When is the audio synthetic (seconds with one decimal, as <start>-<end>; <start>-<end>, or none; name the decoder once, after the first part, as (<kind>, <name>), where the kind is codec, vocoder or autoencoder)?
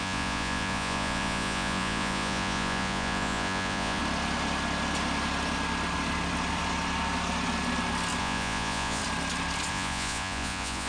0.0-4.0 (vocoder, Vocos); 8.2-9.0; 9.7-10.9